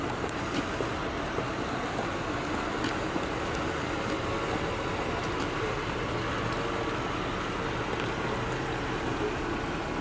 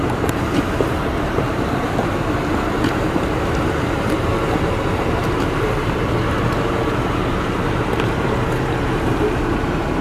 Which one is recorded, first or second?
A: first